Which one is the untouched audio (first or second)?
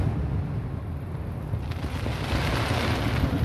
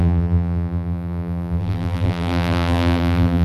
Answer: first